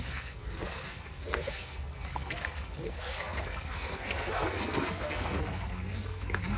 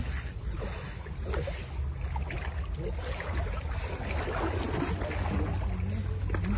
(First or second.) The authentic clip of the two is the second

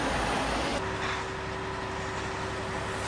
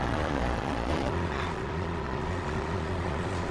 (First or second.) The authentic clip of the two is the first